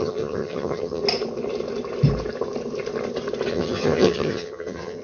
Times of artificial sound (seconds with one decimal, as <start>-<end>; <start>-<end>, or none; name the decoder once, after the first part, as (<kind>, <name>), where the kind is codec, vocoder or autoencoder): 0.0-1.0 (vocoder, HiFi-GAN); 3.5-5.0